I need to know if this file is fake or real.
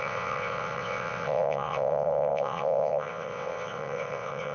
fake